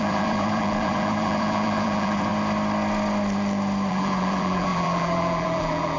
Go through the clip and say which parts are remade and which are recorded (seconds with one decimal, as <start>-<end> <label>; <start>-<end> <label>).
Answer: 0.0-2.3 remade; 2.3-3.9 recorded; 3.9-6.0 remade